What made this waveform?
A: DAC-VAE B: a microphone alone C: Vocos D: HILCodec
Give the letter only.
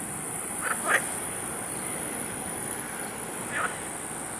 B